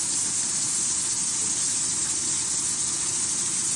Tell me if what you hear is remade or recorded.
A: recorded